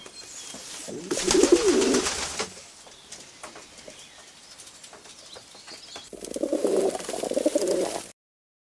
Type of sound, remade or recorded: recorded